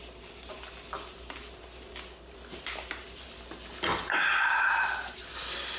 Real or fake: real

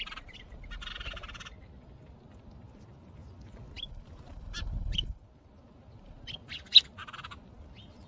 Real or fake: real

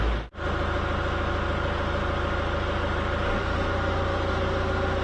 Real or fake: real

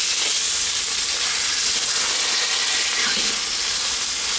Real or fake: real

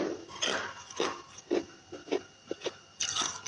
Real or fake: real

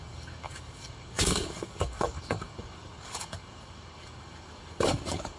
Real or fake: fake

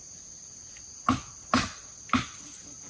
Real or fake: real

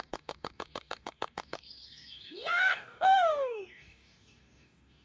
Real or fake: fake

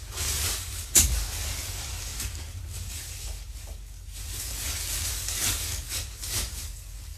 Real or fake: fake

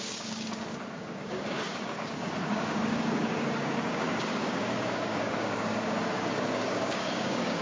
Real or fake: fake